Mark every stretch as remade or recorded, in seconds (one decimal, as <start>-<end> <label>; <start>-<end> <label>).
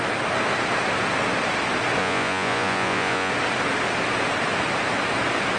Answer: 0.0-2.0 recorded; 2.0-3.3 remade; 3.3-5.6 recorded